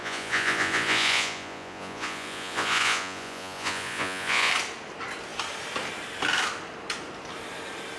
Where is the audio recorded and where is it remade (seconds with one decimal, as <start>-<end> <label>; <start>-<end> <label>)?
0.0-4.5 remade; 4.5-8.0 recorded